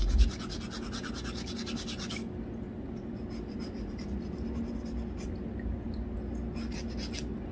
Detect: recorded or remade recorded